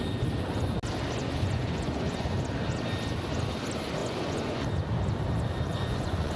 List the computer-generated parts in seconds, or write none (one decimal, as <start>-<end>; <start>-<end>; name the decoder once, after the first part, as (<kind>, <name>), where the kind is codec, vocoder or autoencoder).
1.2-2.4 (vocoder, Vocos); 4.0-4.7; 5.7-6.4